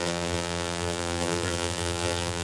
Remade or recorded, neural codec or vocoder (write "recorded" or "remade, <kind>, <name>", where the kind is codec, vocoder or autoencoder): remade, vocoder, BigVGAN v2